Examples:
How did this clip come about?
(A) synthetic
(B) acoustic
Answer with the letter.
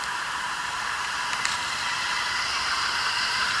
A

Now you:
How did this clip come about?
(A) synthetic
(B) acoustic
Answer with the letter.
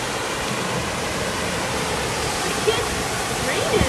A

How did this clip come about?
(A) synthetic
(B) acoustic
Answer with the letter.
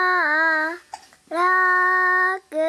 B